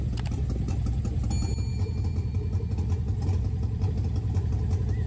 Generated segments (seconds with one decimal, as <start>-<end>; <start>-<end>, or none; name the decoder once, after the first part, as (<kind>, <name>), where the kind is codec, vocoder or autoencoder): 1.7-3.9 (vocoder, BigVGAN v2)